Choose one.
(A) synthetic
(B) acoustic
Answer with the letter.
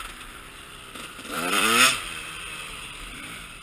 A